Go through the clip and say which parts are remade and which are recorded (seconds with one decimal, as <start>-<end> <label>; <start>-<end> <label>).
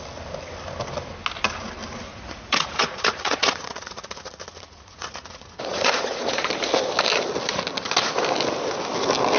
0.0-2.1 recorded; 2.1-6.5 remade; 6.5-9.4 recorded